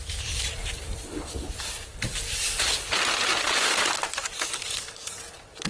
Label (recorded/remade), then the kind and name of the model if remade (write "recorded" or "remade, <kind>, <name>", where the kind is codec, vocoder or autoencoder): recorded